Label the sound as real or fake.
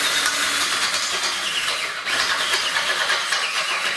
real